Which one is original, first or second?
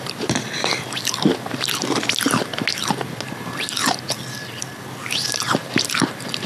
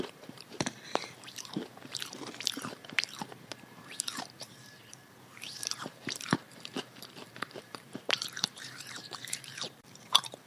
first